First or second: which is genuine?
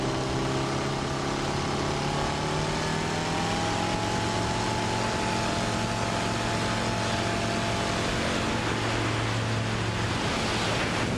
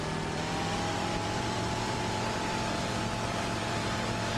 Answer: first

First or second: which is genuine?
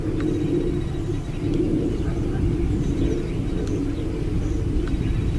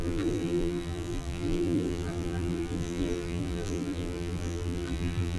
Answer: first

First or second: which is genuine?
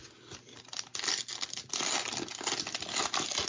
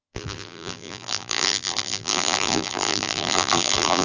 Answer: first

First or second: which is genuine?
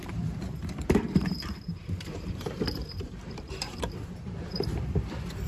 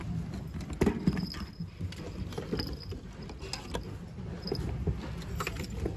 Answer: second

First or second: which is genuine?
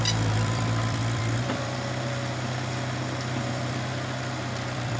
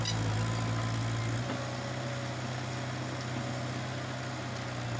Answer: second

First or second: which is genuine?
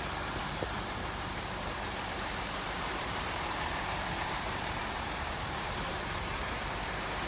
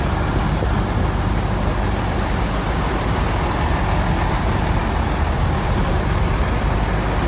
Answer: second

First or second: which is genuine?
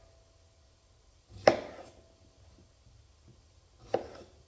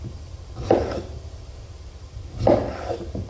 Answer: first